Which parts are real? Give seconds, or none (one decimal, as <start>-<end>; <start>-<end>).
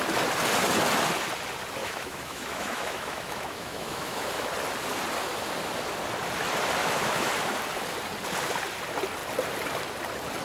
0.0-1.8; 4.5-6.8; 7.3-10.4